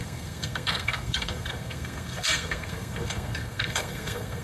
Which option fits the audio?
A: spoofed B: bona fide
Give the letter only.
A